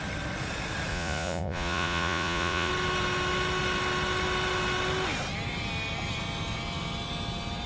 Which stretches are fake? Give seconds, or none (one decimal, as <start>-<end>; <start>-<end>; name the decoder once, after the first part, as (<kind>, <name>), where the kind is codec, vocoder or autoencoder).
0.9-2.7 (vocoder, Vocos)